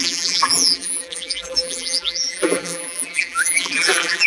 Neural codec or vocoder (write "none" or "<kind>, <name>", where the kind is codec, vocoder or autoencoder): vocoder, BigVGAN v2